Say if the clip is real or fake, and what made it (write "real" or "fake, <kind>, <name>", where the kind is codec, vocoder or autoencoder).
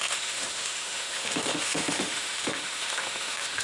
fake, autoencoder, DAC-VAE